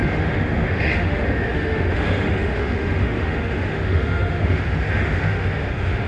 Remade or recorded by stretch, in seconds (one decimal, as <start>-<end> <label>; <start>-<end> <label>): 0.0-6.1 remade